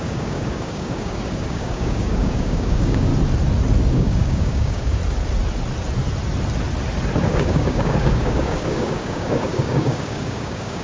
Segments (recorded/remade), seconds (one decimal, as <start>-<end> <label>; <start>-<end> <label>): 0.0-3.1 remade; 3.1-3.9 recorded; 3.9-5.0 remade; 5.0-7.2 recorded; 7.2-10.8 remade